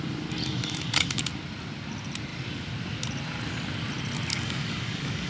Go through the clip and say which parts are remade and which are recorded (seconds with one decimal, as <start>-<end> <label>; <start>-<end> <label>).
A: 0.0-0.4 recorded; 0.4-1.2 remade; 1.2-4.3 recorded; 4.3-5.3 remade